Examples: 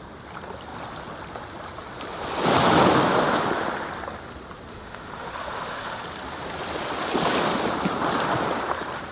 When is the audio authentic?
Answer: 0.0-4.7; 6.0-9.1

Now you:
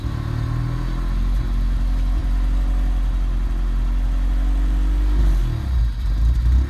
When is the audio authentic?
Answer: 0.0-6.7

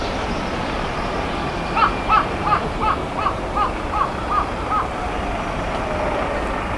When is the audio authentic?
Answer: 0.0-6.8

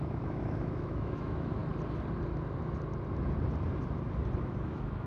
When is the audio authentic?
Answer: 1.6-4.4

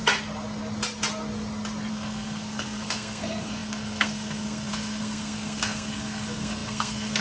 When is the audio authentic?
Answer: 0.0-1.9